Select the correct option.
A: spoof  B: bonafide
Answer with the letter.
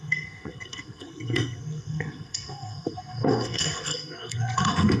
A